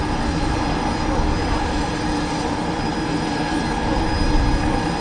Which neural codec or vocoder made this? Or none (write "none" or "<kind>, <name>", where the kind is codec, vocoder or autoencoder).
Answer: none